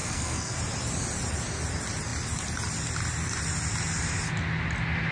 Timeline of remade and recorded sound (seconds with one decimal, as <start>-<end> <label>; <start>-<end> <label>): 0.0-0.6 remade; 0.6-5.1 recorded